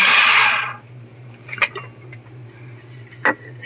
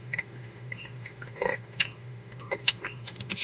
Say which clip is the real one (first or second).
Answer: first